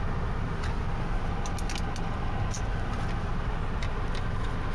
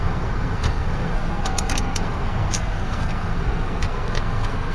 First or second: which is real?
first